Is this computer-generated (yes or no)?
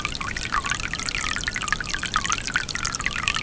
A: no